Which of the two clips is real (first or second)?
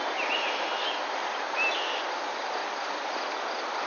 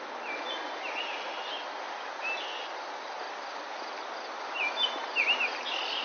second